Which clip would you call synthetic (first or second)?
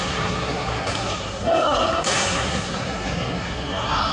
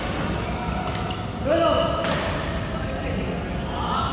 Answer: first